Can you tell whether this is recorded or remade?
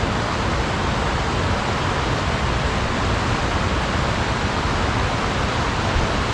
recorded